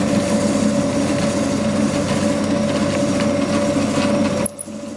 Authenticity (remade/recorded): recorded